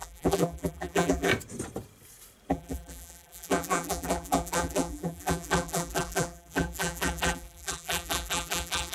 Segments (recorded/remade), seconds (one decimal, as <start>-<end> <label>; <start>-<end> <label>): 0.0-1.3 remade; 1.3-2.5 recorded; 2.5-8.9 remade